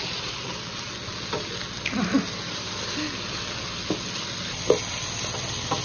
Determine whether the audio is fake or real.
real